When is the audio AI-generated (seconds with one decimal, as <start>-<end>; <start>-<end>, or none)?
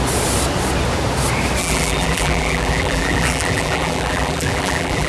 1.6-5.1